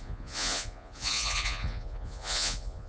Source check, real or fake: fake